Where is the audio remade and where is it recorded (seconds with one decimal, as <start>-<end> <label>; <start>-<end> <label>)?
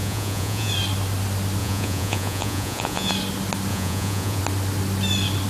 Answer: 0.0-0.7 remade; 0.7-1.6 recorded; 1.6-3.1 remade; 3.1-3.7 recorded; 3.7-4.4 remade; 4.4-5.5 recorded